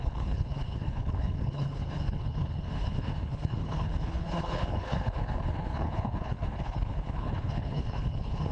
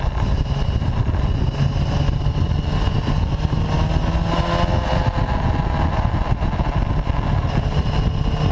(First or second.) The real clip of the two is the second